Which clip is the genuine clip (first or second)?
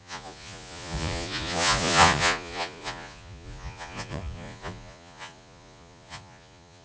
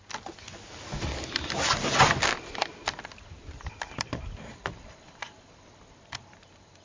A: second